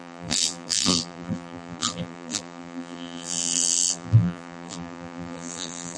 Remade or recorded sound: remade